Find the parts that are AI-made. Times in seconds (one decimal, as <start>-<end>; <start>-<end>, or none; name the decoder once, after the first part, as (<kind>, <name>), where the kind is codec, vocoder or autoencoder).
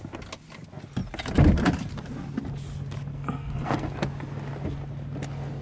3.1-3.9 (codec, SNAC)